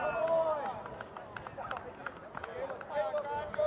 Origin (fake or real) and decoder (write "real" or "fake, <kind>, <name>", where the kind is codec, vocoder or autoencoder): real